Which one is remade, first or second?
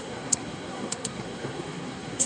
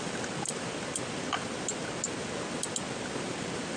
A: first